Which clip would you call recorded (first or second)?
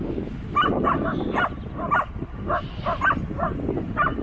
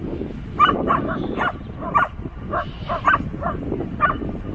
first